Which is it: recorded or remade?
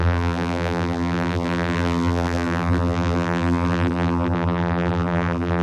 remade